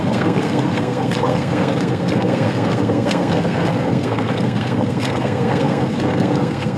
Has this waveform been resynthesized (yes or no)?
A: yes